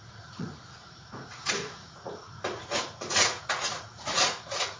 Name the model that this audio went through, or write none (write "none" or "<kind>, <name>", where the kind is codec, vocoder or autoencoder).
vocoder, Vocos